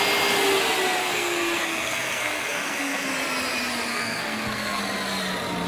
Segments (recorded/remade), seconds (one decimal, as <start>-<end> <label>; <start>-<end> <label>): 0.0-1.0 recorded; 1.0-3.1 remade; 3.1-3.9 recorded; 3.9-4.8 remade; 4.8-5.7 recorded